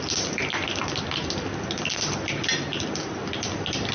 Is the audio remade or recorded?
recorded